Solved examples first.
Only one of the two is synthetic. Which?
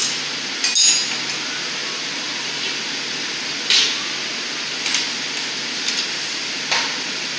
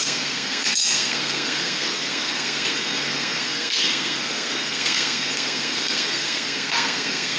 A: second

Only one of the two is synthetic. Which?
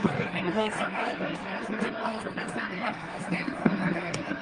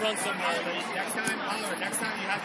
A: first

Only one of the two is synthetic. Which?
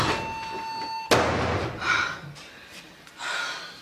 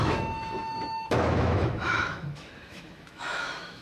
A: second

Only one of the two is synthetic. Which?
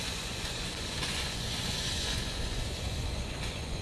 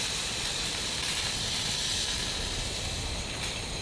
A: first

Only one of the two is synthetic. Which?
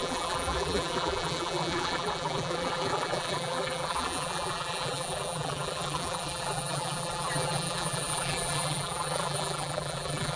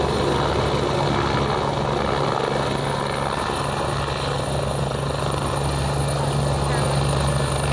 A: first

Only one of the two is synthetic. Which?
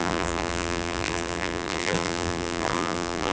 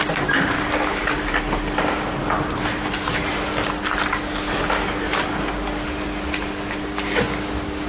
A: first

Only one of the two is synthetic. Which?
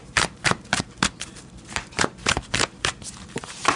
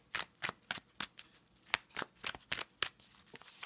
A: first